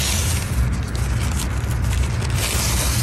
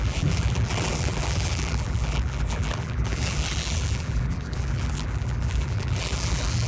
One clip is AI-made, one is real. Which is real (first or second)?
first